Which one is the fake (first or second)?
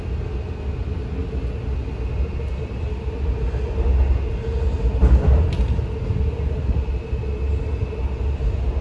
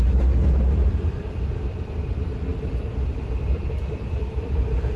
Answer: second